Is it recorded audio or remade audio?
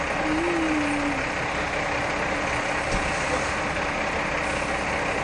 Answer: recorded